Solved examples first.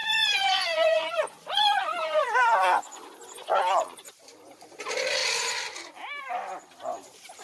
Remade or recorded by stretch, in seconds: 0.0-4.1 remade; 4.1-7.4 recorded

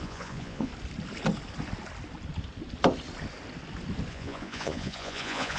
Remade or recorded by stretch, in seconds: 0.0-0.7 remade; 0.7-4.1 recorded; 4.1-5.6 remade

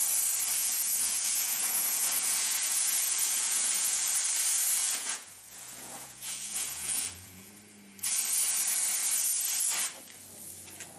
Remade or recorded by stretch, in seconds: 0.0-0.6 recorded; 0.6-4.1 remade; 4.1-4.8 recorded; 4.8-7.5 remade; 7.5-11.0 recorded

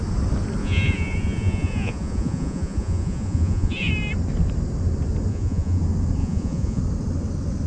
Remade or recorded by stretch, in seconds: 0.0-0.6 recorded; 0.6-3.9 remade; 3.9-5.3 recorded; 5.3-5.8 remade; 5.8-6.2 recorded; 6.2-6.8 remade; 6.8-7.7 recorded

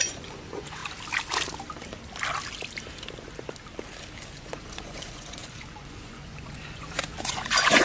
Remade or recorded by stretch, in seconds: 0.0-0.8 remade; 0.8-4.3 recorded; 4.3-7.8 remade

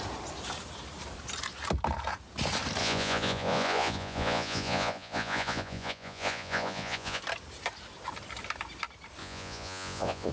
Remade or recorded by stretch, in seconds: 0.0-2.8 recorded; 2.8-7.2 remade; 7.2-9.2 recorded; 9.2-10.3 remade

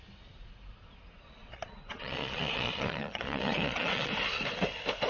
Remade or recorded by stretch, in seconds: 0.0-1.4 recorded; 1.4-4.1 remade; 4.1-5.1 recorded

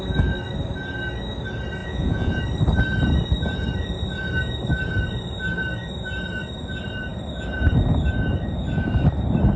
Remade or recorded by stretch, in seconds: 0.0-1.8 recorded; 1.8-2.4 remade; 2.4-9.6 recorded